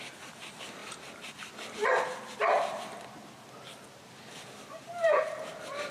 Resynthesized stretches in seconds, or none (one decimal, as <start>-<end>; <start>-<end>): none